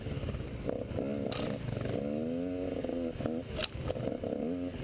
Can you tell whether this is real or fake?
real